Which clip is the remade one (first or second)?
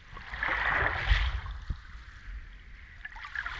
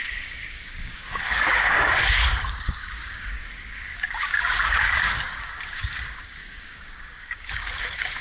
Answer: second